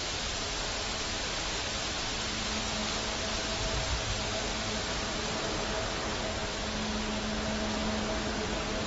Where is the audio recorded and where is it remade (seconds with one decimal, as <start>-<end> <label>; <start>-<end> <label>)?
0.0-8.9 recorded